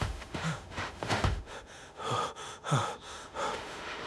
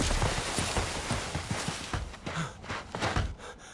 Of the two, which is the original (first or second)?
second